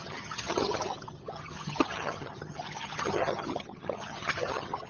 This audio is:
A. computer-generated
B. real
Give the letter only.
A